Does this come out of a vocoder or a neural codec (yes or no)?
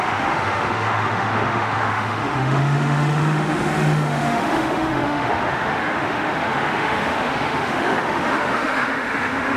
yes